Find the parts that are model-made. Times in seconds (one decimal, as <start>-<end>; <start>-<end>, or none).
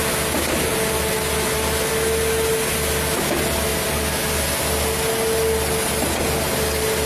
none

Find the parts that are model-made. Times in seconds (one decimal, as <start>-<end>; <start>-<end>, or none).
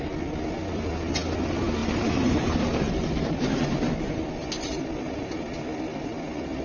1.8-3.9